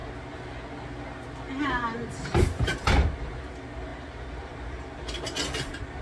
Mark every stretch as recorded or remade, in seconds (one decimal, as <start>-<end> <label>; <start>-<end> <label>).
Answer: 0.0-2.0 recorded; 2.0-3.5 remade; 3.5-3.9 recorded; 3.9-6.0 remade